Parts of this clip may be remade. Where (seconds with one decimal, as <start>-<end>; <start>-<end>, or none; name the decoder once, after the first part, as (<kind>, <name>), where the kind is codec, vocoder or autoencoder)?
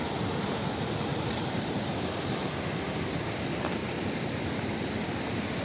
1.1-1.8 (vocoder, BigVGAN v2); 3.8-4.6